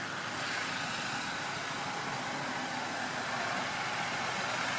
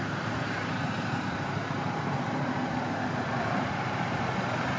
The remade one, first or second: second